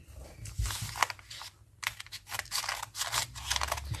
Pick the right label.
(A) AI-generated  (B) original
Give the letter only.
B